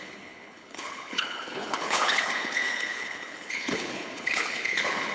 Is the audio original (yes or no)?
no